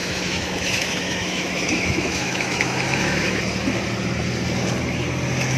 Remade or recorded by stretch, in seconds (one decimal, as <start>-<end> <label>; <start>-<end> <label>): 0.0-3.4 remade; 3.4-5.6 recorded